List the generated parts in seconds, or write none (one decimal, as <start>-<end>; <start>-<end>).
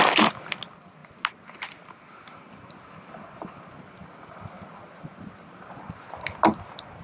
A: none